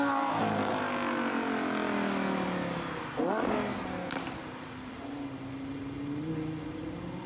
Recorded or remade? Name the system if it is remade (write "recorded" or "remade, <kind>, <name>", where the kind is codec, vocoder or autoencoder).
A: recorded